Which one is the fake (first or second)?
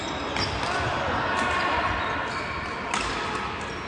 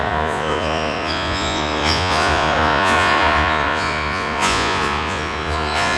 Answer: second